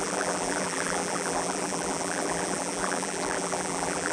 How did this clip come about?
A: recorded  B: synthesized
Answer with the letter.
B